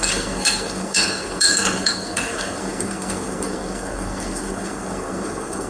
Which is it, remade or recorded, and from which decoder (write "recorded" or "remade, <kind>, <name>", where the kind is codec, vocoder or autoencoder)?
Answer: remade, codec, SNAC